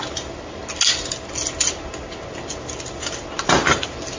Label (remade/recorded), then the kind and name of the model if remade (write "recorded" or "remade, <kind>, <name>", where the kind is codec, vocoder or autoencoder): recorded